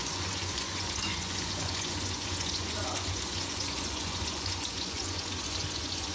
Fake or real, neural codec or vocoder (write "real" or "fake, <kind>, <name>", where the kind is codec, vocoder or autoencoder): fake, vocoder, Vocos